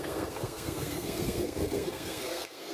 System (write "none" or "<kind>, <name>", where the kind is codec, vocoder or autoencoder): codec, SNAC